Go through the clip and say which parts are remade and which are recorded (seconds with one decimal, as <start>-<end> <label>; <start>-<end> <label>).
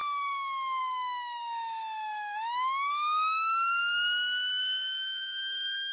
0.0-5.9 remade